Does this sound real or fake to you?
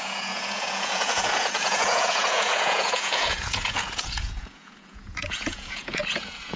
fake